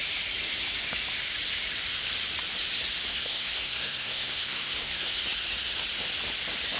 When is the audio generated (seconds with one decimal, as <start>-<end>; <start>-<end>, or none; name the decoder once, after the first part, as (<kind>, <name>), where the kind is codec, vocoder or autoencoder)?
3.1-5.2 (codec, SNAC)